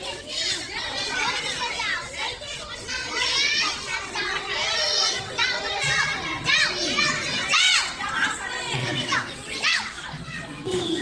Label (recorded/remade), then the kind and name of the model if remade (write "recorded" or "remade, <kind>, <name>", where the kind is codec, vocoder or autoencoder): remade, vocoder, WaveNeXt